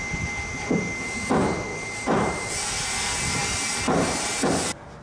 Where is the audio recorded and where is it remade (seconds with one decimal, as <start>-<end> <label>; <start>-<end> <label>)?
0.0-1.7 recorded; 1.7-2.5 remade; 2.5-3.4 recorded; 3.4-4.5 remade; 4.5-5.0 recorded